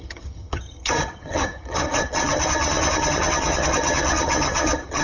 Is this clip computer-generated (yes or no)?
yes